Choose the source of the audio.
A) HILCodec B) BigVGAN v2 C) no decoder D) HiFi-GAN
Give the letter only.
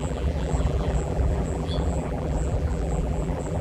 B